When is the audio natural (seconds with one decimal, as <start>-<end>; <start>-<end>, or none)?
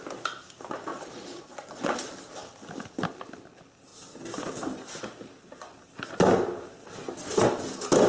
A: 0.0-0.9; 2.0-8.1